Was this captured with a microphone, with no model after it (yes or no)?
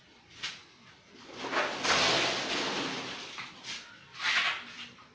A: yes